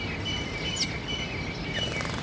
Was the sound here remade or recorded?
recorded